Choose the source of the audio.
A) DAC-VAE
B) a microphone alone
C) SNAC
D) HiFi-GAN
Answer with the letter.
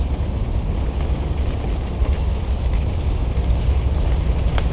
B